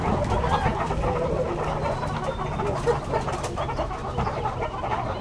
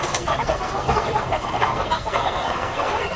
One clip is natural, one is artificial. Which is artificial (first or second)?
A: second